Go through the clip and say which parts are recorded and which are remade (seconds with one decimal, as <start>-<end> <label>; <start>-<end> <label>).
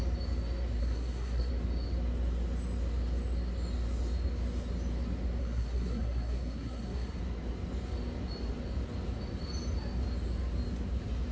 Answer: 0.0-0.8 recorded; 0.8-1.5 remade; 1.5-5.4 recorded; 5.4-7.2 remade; 7.2-11.3 recorded